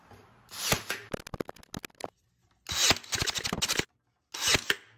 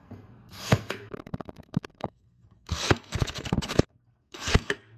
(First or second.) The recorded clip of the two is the first